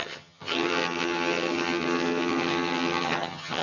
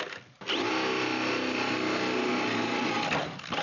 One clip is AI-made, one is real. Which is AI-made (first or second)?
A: first